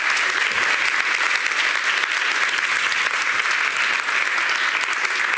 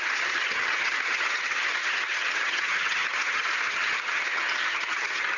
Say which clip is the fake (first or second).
second